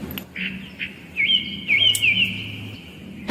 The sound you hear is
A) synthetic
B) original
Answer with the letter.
B